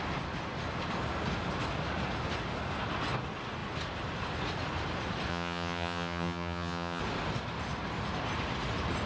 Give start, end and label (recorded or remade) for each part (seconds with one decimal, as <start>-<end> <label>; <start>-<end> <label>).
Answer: 0.0-5.3 recorded; 5.3-7.0 remade; 7.0-9.1 recorded